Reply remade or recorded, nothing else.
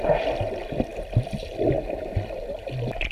recorded